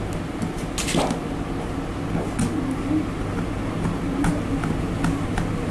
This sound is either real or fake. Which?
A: real